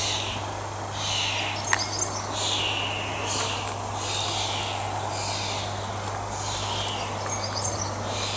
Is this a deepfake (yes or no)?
no